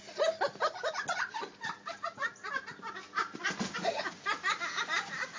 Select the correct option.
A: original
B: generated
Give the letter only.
A